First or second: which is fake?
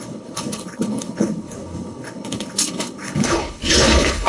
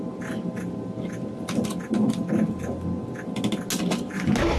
first